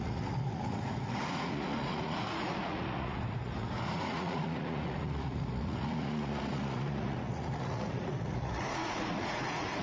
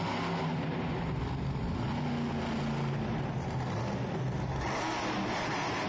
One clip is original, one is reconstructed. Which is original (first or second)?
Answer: second